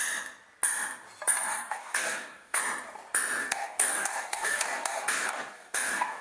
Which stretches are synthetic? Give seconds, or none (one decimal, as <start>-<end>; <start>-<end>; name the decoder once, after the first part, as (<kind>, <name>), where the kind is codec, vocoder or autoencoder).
1.5-2.6 (codec, DAC); 3.4-6.2